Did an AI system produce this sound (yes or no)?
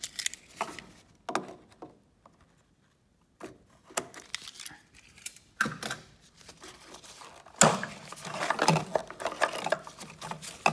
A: no